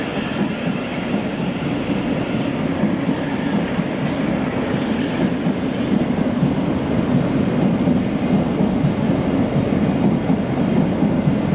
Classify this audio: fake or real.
real